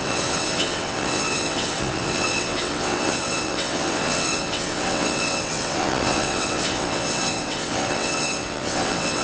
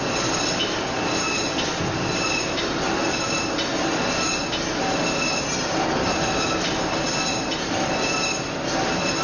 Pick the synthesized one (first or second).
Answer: first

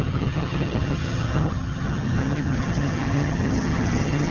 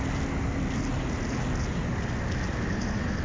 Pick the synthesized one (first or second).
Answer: first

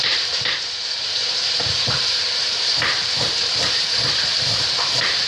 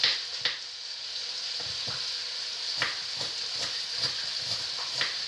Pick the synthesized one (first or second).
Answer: first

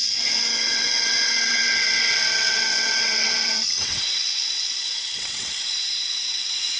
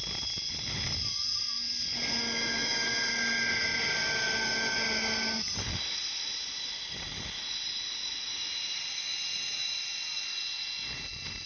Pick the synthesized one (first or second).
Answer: first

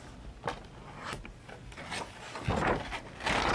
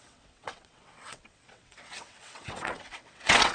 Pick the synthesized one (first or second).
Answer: second